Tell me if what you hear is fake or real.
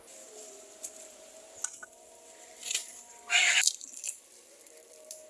real